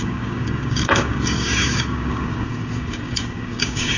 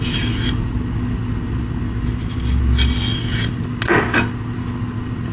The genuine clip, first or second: second